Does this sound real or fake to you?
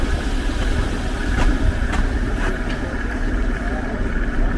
real